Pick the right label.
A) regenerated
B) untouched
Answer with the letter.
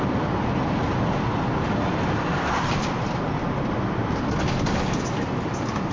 B